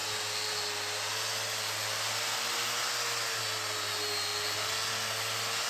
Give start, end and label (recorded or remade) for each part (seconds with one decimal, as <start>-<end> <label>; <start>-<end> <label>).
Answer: 0.0-5.7 recorded